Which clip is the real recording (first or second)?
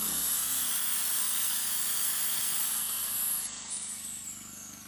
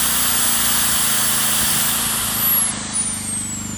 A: second